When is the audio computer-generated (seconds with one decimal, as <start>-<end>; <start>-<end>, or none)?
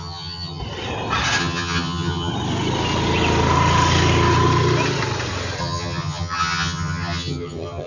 0.0-0.6; 1.4-2.3; 5.6-7.9